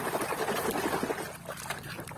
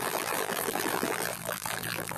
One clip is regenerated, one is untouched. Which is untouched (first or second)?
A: first